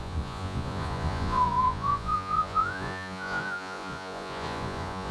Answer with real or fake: fake